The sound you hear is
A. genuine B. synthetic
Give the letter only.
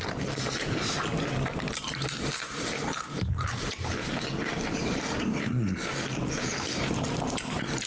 B